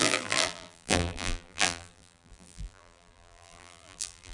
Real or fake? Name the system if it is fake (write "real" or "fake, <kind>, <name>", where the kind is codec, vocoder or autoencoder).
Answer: fake, vocoder, BigVGAN v2